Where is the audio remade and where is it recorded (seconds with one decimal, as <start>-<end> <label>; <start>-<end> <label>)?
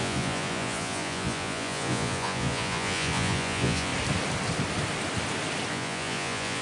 0.0-3.9 remade; 3.9-5.7 recorded; 5.7-6.6 remade